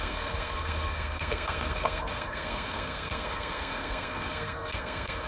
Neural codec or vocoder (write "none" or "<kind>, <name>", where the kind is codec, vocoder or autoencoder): codec, SNAC